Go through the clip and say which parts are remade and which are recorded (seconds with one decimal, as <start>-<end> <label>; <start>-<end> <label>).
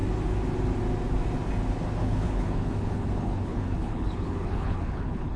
0.0-2.0 recorded; 2.0-5.4 remade